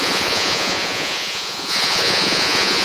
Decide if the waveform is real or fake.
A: fake